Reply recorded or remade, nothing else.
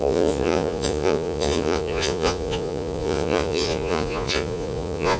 remade